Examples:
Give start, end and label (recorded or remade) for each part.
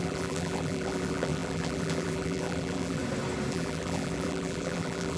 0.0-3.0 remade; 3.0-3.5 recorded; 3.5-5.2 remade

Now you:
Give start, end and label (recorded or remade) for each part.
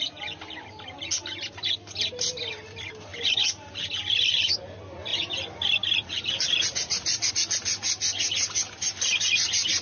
0.0-5.1 recorded; 5.1-7.3 remade; 7.3-9.8 recorded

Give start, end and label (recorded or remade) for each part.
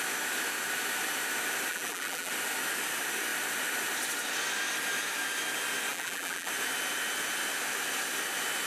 0.0-1.7 recorded; 1.7-2.3 remade; 2.3-5.9 recorded; 5.9-6.5 remade; 6.5-8.7 recorded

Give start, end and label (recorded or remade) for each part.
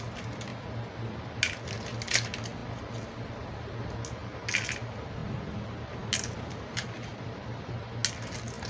0.0-7.1 recorded; 7.1-7.9 remade; 7.9-8.7 recorded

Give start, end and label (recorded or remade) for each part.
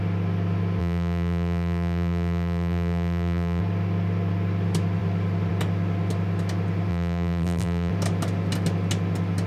0.0-0.8 recorded; 0.8-3.6 remade; 3.6-6.9 recorded; 6.9-7.9 remade; 7.9-9.5 recorded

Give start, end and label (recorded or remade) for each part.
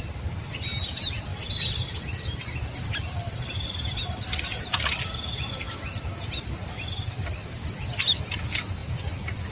0.0-1.3 recorded; 1.3-5.5 remade; 5.5-8.8 recorded; 8.8-9.5 remade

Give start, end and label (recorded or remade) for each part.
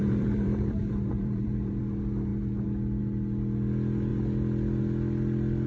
0.0-1.8 remade; 1.8-5.7 recorded